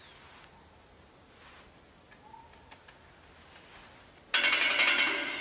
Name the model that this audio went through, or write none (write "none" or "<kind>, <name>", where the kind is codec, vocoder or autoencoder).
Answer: none